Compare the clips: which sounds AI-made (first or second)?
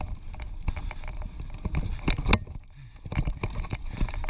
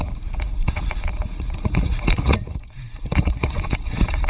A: second